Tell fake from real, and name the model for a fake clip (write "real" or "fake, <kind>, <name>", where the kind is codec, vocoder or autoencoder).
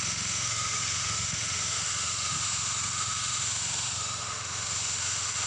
fake, autoencoder, DAC-VAE